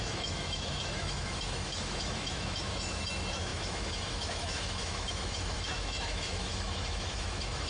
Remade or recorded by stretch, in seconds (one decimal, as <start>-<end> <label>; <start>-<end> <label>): 0.0-7.7 remade